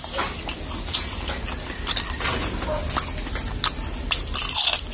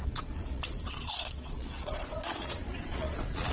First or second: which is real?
first